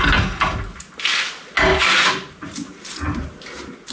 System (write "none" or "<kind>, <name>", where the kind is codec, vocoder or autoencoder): none